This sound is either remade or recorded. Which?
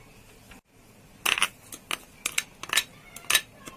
recorded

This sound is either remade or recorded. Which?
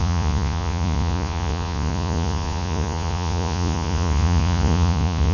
remade